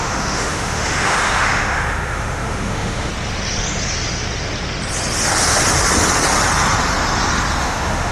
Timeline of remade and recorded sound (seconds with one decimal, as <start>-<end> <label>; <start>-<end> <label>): 0.0-3.1 remade; 3.1-7.6 recorded; 7.6-8.1 remade